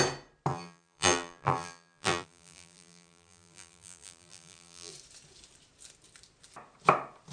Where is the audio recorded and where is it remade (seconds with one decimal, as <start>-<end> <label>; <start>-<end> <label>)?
0.0-0.5 recorded; 0.5-4.9 remade; 4.9-7.3 recorded